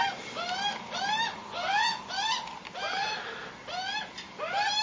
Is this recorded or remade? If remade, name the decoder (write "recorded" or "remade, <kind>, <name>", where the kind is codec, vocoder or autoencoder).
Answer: recorded